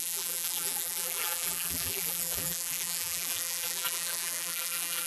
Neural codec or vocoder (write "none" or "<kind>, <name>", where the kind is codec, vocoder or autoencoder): vocoder, BigVGAN v2